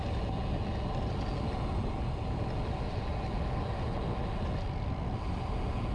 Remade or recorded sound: recorded